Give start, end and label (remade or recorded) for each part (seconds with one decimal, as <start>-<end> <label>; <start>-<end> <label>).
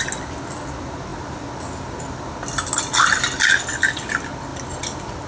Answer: 0.0-5.3 recorded